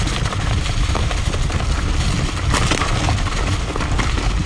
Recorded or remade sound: recorded